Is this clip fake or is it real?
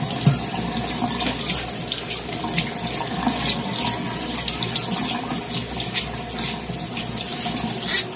real